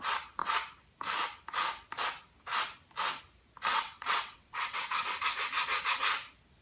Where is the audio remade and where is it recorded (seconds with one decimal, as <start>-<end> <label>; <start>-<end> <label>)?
0.0-3.7 recorded; 3.7-5.0 remade; 5.0-6.6 recorded